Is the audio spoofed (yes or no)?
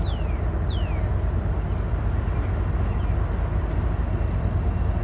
no